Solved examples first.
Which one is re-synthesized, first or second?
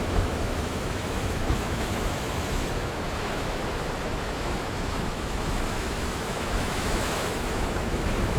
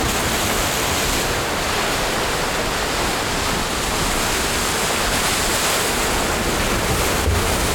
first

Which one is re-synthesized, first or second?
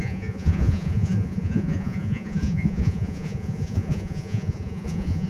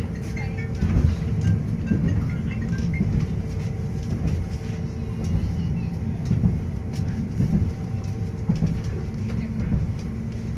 first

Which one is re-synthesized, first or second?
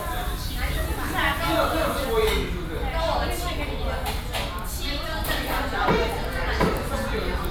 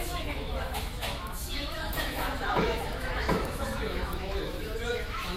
second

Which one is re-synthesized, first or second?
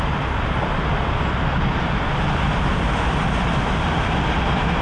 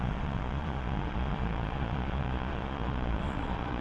second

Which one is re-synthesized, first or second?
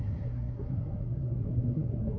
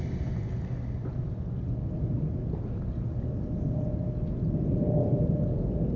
first